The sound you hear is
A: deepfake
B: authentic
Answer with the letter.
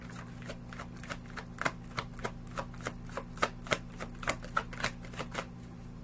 B